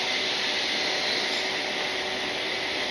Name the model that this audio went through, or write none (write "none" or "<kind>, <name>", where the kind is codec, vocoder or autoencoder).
none